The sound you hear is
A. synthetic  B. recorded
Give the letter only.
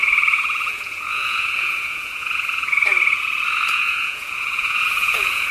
A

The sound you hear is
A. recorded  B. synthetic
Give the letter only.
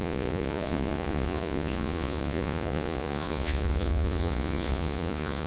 B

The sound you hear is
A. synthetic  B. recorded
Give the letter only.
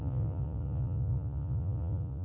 A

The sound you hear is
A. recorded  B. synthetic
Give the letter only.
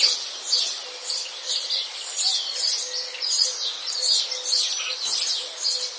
A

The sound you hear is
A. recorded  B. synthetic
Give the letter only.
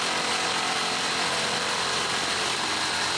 A